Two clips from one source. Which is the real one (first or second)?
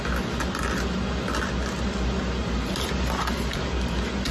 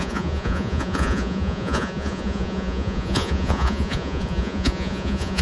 first